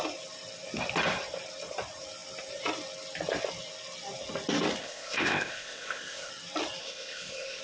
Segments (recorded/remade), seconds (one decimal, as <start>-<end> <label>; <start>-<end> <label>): 0.0-4.8 recorded; 4.8-6.3 remade; 6.3-6.8 recorded; 6.8-7.6 remade